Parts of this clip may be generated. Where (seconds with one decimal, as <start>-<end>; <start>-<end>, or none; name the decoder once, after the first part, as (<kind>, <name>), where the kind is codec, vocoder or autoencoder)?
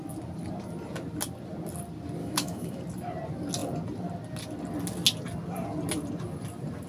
2.2-2.8 (autoencoder, DAC-VAE)